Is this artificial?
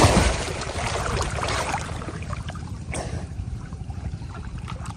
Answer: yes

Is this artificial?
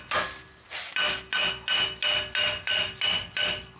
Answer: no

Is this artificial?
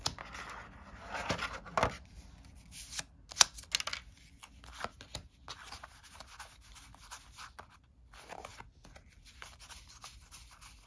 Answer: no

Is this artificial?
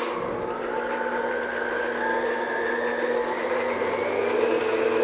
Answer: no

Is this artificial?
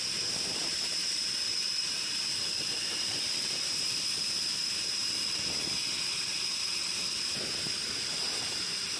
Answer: no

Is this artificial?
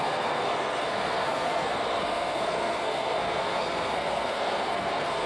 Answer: yes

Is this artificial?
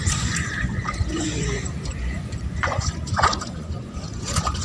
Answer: yes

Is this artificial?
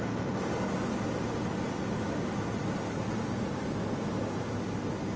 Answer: no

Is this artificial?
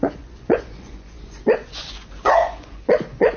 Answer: yes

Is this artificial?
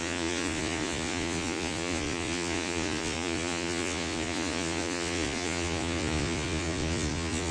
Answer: yes